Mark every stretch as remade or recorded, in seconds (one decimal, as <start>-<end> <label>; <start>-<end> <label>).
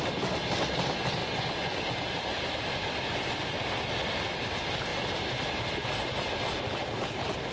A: 0.0-1.2 recorded; 1.2-1.8 remade; 1.8-7.5 recorded